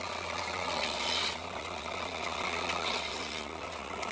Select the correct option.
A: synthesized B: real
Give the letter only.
A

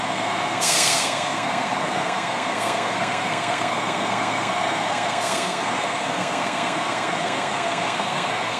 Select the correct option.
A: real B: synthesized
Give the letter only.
B